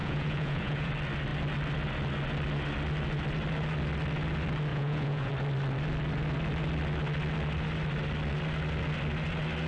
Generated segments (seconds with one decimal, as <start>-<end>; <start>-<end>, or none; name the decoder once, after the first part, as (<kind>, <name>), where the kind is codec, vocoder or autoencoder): 0.0-0.9 (vocoder, Vocos); 4.7-5.3